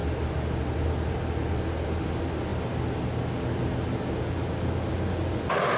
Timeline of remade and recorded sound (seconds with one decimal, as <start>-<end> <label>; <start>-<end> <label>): 0.0-5.8 recorded